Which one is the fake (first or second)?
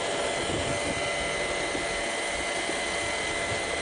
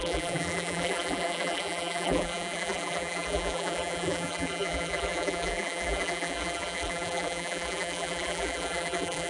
second